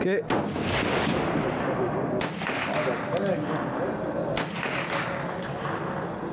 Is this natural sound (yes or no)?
yes